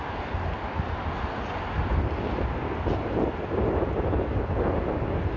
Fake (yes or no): no